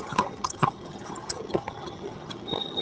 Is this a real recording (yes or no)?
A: no